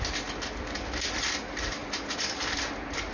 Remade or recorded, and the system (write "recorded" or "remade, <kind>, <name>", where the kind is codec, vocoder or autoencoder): recorded